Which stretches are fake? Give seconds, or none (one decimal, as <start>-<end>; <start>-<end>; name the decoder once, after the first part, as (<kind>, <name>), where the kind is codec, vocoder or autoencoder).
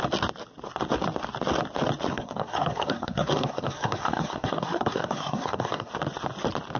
2.1-5.9 (codec, SNAC)